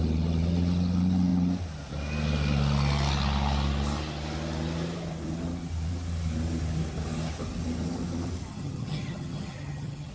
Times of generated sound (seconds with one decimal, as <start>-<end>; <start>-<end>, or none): 8.5-10.1